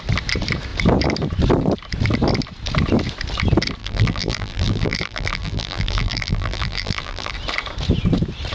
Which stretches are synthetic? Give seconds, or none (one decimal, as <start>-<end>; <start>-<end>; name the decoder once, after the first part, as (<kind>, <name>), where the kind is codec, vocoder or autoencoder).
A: 3.8-7.3 (vocoder, BigVGAN v2)